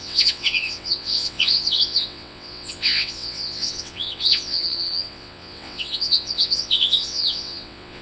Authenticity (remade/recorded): remade